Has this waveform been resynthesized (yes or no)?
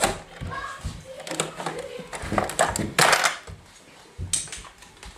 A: no